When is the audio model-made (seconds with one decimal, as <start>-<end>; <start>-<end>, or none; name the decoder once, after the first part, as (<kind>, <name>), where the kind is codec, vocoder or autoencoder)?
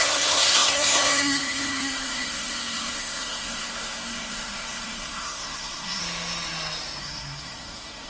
0.0-6.0 (codec, SNAC); 7.0-8.1